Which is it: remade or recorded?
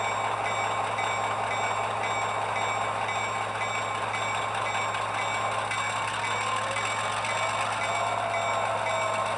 recorded